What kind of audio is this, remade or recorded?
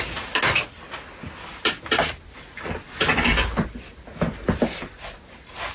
recorded